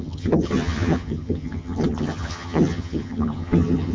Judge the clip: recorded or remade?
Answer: remade